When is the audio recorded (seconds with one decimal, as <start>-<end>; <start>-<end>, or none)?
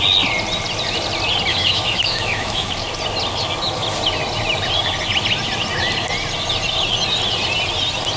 0.0-1.5; 2.7-8.2